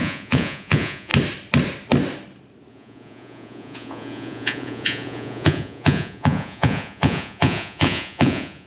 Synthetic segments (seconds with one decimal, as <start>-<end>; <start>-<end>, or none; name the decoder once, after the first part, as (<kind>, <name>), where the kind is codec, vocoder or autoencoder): 0.0-1.1 (vocoder, Vocos); 2.7-8.7